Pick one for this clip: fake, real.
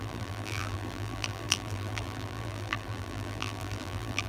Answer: fake